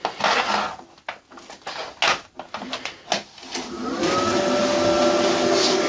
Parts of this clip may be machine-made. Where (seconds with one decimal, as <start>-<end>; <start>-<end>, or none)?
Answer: none